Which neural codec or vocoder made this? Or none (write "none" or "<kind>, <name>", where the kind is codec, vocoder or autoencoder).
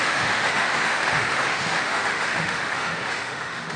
autoencoder, DAC-VAE